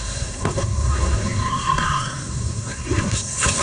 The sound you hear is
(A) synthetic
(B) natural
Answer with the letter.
A